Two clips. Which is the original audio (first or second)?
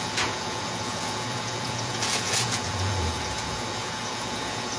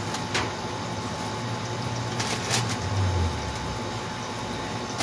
second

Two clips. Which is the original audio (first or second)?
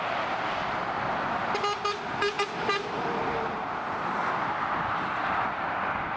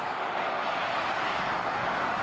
first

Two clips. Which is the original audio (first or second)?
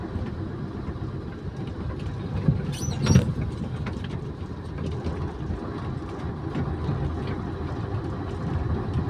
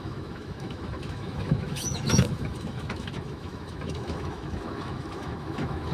first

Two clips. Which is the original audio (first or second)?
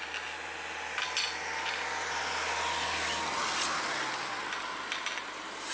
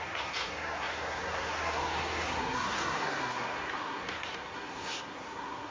first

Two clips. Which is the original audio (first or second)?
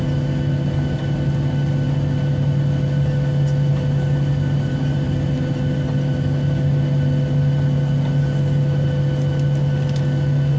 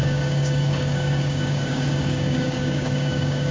first